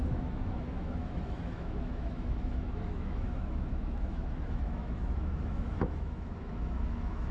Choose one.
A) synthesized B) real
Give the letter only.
A